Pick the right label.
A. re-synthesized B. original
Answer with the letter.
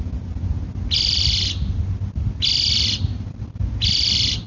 B